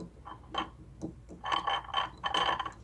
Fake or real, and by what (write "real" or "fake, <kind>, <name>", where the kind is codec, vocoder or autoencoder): real